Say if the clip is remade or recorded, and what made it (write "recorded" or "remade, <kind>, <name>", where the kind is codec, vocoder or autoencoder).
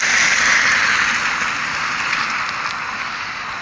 recorded